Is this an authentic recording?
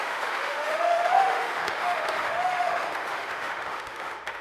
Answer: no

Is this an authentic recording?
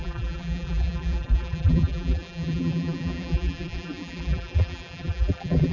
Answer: no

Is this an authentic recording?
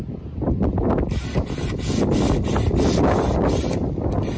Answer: yes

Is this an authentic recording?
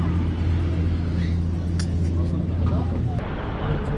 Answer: yes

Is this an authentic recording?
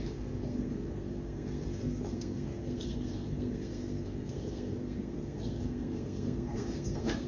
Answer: no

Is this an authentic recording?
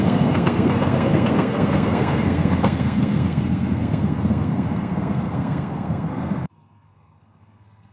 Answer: no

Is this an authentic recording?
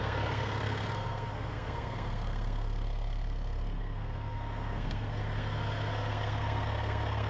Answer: no